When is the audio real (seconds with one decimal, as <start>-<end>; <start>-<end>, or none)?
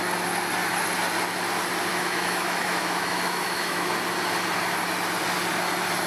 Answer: 0.0-1.9; 3.9-6.1